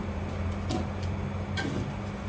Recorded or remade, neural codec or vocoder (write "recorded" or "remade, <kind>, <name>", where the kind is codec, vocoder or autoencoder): recorded